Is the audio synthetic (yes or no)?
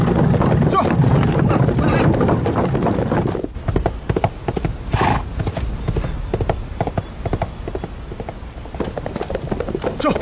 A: no